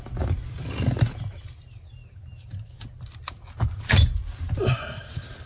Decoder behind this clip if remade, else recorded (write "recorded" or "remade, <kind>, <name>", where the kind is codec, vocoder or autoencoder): recorded